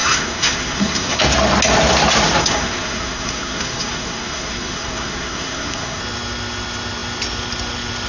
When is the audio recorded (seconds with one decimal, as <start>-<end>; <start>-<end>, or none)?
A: 1.2-2.4; 6.0-8.1